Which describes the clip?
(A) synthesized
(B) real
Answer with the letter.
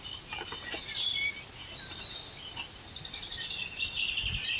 B